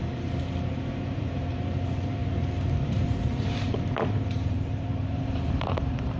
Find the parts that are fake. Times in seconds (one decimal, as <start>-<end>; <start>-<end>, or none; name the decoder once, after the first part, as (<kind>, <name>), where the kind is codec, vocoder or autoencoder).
0.0-6.2 (vocoder, BigVGAN v2)